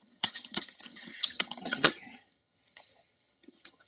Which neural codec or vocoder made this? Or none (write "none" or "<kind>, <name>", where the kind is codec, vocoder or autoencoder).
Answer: vocoder, HiFi-GAN